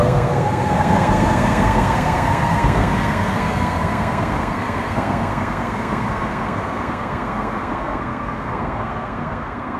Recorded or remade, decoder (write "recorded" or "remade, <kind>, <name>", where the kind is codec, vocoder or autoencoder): remade, codec, SNAC